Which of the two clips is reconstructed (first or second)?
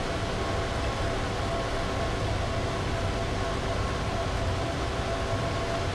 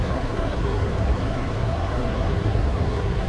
second